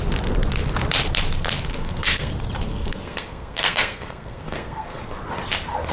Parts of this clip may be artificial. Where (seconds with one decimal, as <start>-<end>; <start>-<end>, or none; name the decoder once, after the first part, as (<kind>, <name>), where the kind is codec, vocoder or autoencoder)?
1.7-2.3 (codec, SNAC); 2.7-5.0